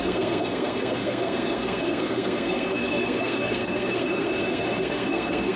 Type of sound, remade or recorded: remade